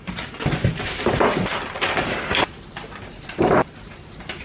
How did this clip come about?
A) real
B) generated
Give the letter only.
B